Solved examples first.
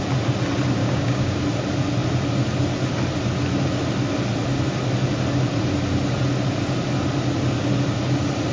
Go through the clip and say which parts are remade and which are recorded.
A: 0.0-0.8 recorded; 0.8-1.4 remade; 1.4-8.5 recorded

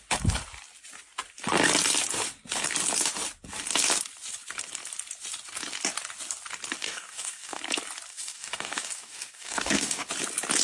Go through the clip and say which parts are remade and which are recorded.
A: 0.0-6.8 recorded; 6.8-7.6 remade; 7.6-8.1 recorded; 8.1-10.1 remade; 10.1-10.6 recorded